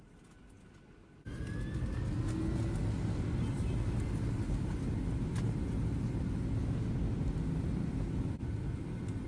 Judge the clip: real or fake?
real